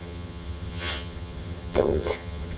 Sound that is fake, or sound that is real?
fake